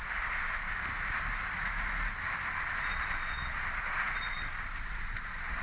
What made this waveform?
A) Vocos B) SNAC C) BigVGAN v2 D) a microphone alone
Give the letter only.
C